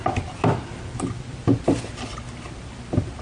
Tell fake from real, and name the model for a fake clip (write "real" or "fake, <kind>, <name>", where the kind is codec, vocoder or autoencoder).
fake, vocoder, BigVGAN v2